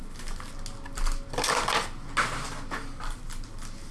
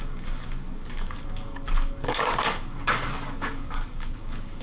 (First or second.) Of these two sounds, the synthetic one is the second